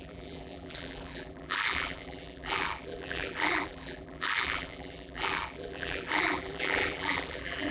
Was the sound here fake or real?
fake